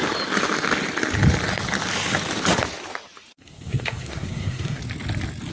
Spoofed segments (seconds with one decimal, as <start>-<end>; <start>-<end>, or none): 3.3-4.8